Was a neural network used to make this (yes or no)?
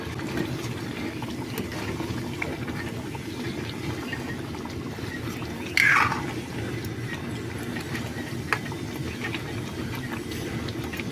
no